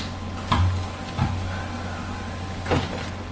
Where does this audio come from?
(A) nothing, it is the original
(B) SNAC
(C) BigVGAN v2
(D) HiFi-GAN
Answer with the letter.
A